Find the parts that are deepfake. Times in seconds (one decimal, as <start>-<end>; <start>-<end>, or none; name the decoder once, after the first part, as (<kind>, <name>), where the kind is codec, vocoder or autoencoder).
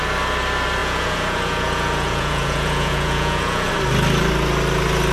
0.8-3.7 (vocoder, Vocos)